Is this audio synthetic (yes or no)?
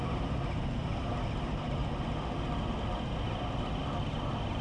no